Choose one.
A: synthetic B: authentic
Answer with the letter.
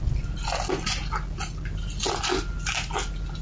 B